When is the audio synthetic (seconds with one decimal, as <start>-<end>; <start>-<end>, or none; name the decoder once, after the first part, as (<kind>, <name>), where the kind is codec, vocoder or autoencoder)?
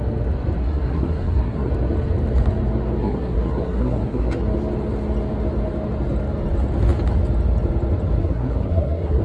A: 0.6-1.7 (codec, SNAC); 3.0-4.4; 8.2-9.2